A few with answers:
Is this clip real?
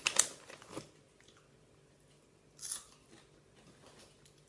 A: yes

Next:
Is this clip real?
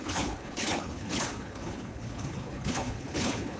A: no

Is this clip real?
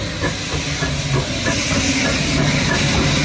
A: yes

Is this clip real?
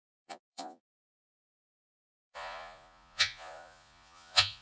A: no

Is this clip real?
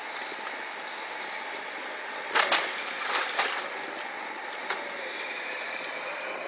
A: yes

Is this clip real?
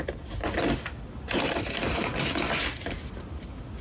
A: yes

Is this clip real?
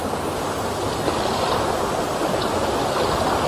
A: yes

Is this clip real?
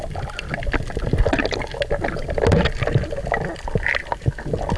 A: yes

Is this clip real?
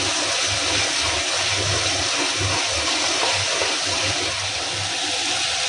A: yes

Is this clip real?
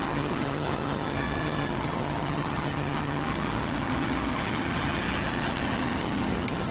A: no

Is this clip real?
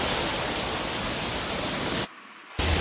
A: yes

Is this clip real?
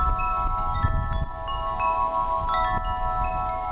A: yes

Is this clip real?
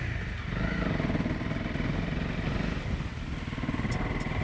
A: yes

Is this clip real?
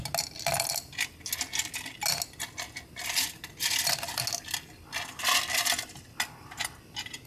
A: yes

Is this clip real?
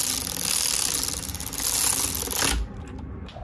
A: yes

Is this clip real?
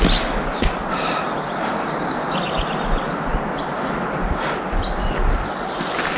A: yes